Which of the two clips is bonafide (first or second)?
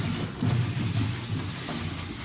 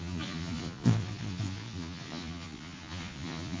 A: first